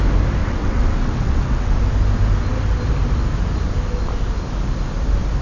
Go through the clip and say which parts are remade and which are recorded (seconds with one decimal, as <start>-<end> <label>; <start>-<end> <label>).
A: 0.0-0.4 recorded; 0.4-1.8 remade; 1.8-5.4 recorded